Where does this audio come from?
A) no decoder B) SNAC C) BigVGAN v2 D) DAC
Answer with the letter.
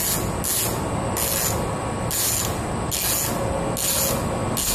A